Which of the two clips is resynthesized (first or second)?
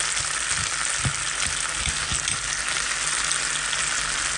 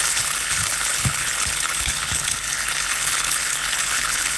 second